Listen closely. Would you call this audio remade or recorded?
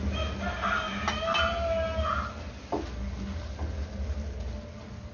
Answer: recorded